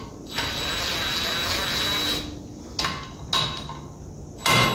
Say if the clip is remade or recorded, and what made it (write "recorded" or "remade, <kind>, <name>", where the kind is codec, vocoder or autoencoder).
recorded